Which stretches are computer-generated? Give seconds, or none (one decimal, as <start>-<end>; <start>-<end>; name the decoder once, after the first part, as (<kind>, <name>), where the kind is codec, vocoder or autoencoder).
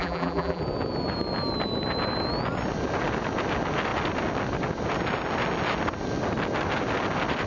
0.0-0.6 (vocoder, BigVGAN v2)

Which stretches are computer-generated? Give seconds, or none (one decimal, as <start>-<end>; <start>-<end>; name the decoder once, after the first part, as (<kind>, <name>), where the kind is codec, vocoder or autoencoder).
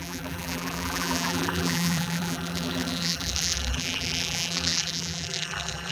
0.0-5.9 (vocoder, BigVGAN v2)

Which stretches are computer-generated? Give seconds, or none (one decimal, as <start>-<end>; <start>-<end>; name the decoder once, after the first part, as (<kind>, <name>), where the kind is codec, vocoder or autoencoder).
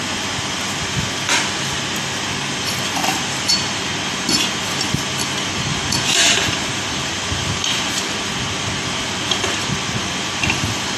3.0-3.8 (vocoder, BigVGAN v2); 5.7-8.0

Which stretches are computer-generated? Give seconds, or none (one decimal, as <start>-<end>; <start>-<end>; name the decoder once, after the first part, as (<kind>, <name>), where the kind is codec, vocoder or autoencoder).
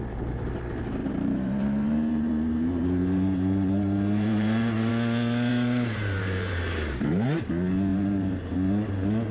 1.0-4.9 (vocoder, BigVGAN v2); 5.5-7.5; 7.9-8.5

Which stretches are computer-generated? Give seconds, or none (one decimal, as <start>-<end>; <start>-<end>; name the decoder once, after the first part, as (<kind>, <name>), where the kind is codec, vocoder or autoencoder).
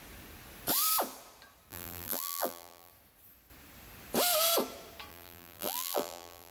1.7-2.9 (vocoder, BigVGAN v2); 5.1-6.5